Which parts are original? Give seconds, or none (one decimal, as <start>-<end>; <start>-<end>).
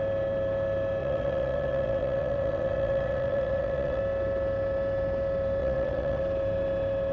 0.0-1.0; 4.0-5.6; 6.2-7.1